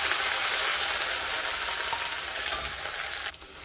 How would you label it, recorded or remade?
recorded